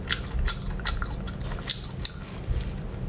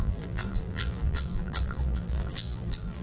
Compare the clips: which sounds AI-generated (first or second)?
second